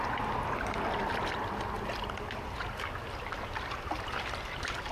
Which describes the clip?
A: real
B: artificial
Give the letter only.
A